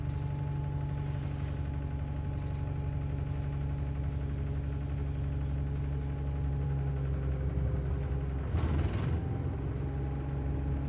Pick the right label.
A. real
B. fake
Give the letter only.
A